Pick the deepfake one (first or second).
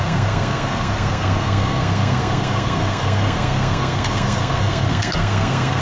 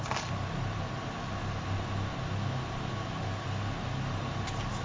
first